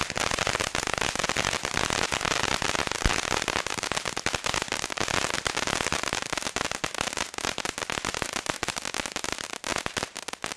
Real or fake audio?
real